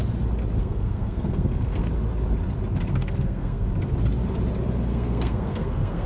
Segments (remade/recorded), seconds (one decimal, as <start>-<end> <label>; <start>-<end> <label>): 0.0-0.6 recorded; 0.6-1.9 remade; 1.9-2.9 recorded; 2.9-3.7 remade; 3.7-4.9 recorded; 4.9-6.1 remade